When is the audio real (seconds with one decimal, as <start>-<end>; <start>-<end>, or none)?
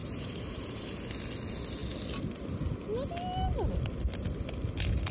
1.0-5.1